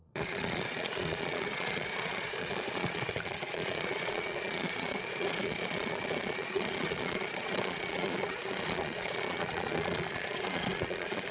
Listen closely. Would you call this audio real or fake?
fake